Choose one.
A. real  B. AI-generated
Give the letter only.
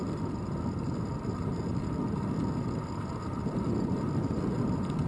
A